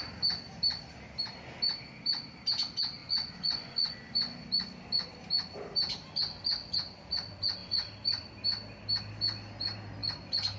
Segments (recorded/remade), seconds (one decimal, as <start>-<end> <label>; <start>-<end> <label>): 0.0-3.0 recorded; 3.0-3.9 remade; 3.9-10.6 recorded